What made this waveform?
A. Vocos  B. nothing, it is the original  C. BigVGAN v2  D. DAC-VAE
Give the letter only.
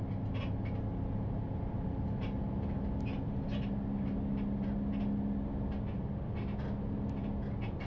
B